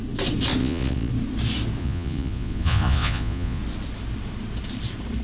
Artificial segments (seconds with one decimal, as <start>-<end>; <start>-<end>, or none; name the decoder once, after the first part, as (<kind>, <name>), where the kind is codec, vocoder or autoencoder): 0.6-1.1 (vocoder, Vocos); 1.8-3.6